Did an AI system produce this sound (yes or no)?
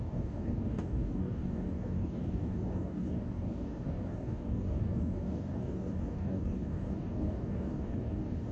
yes